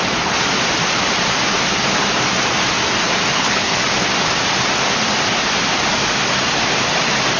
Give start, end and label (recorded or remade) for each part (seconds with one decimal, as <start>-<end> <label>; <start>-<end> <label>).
0.0-3.3 recorded; 3.3-3.8 remade; 3.8-7.4 recorded